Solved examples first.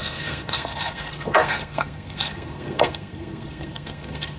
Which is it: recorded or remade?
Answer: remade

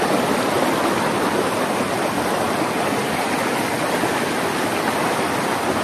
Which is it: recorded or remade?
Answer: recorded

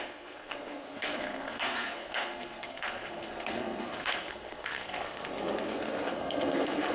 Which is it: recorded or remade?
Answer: remade